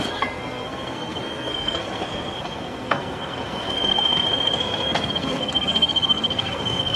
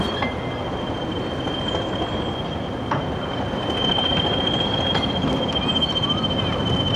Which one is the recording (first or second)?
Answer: second